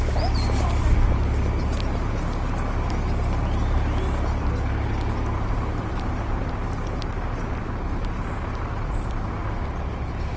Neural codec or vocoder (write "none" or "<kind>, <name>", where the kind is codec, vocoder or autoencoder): none